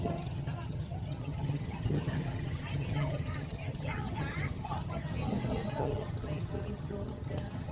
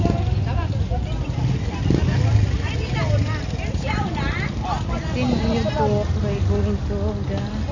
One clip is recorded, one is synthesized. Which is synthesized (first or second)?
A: first